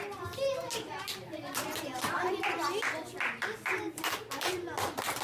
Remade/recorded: recorded